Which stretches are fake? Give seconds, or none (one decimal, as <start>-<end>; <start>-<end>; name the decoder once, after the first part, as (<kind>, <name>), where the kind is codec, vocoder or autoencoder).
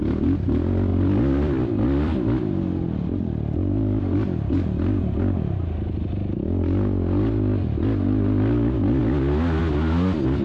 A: 0.9-4.0 (vocoder, BigVGAN v2)